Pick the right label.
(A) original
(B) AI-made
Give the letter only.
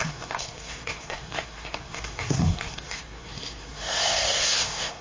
B